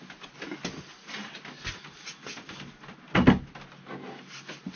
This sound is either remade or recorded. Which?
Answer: recorded